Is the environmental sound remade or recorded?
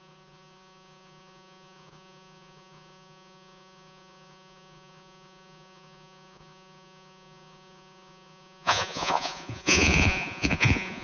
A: remade